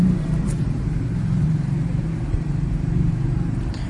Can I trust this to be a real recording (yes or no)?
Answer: no